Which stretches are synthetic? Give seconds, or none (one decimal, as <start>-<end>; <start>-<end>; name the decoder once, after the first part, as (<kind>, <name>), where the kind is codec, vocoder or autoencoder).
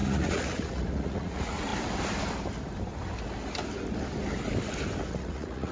0.0-1.7 (vocoder, Vocos); 5.1-5.7